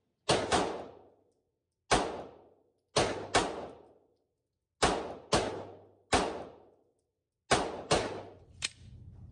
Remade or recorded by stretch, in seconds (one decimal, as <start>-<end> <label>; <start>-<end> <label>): 0.0-9.3 recorded